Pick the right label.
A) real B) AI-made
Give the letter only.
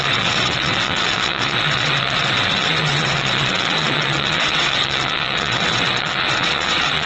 B